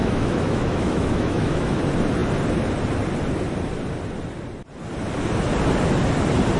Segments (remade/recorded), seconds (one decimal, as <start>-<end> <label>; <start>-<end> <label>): 0.0-1.8 remade; 1.8-6.6 recorded